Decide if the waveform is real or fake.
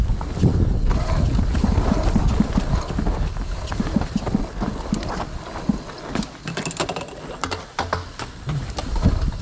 real